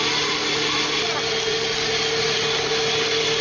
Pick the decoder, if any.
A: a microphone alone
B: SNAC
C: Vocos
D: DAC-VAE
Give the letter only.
A